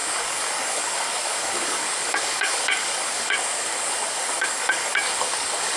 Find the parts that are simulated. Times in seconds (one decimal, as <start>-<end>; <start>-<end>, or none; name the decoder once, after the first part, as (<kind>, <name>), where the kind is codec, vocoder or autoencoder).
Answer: 0.0-5.8 (codec, DAC)